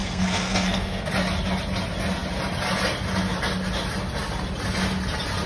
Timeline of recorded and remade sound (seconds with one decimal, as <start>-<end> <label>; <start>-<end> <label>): 0.0-1.1 remade; 1.1-5.5 recorded